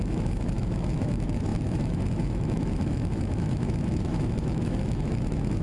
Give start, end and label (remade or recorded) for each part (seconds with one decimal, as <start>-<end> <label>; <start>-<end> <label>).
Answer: 0.0-5.6 remade